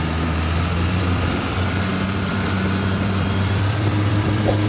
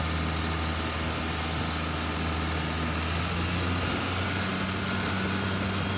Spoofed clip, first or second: first